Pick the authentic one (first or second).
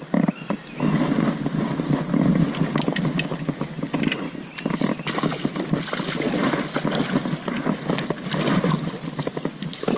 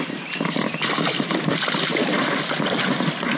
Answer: first